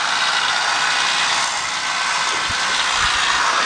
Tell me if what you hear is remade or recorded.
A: recorded